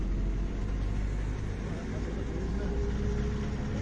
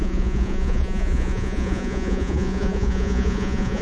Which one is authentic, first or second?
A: first